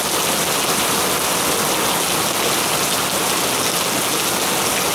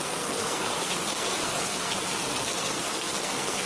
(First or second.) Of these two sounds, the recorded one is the first